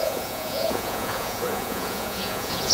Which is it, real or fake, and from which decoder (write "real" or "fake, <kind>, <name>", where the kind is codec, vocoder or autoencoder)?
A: fake, vocoder, Vocos